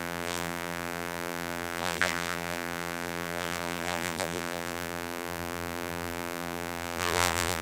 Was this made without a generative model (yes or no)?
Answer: no